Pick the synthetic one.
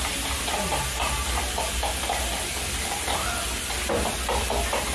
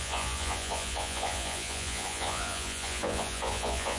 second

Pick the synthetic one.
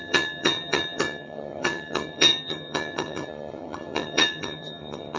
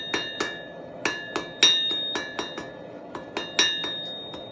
first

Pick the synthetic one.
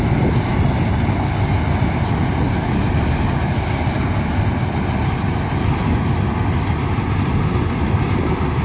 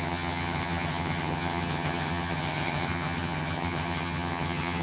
second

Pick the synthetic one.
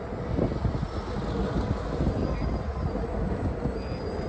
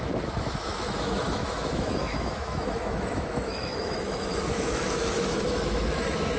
second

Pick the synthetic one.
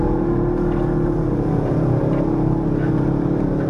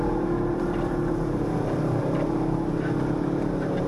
second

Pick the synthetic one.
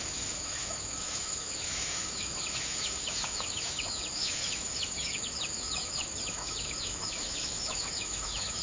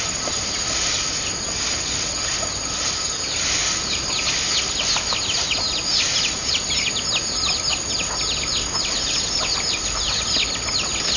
first